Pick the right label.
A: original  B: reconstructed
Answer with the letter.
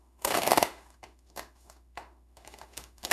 B